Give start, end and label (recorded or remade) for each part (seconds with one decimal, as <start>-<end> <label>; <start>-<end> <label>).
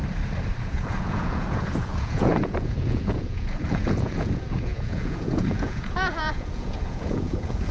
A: 0.0-0.6 recorded; 0.6-7.7 remade